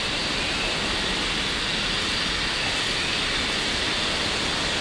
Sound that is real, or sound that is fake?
real